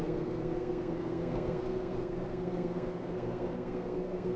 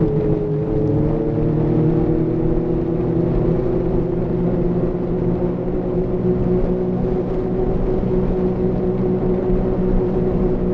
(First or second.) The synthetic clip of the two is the first